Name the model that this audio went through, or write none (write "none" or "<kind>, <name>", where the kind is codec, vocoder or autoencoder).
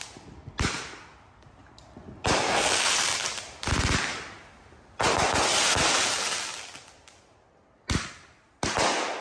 none